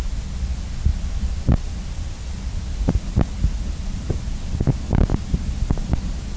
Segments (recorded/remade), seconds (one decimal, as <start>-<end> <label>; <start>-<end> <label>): 0.0-0.9 recorded; 0.9-4.7 remade; 4.7-6.4 recorded